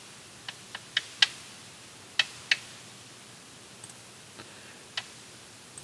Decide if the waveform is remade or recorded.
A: recorded